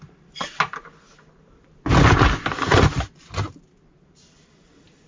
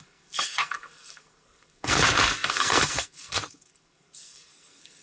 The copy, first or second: second